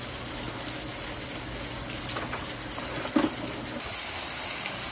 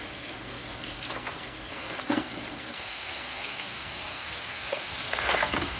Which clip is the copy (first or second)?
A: second